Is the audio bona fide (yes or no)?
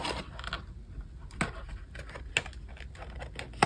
yes